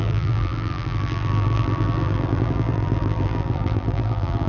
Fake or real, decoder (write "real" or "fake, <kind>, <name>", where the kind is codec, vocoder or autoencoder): fake, vocoder, BigVGAN v2